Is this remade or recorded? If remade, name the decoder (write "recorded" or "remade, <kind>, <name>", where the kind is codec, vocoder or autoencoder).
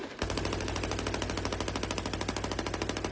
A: recorded